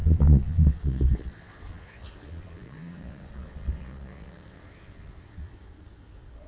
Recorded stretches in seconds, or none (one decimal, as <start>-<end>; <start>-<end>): none